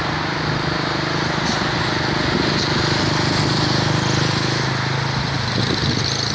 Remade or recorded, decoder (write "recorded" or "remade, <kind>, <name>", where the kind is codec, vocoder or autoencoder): recorded